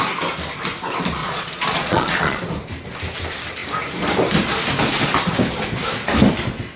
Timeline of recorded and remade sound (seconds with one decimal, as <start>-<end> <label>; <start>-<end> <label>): 0.0-1.2 recorded; 1.2-2.4 remade; 2.4-6.8 recorded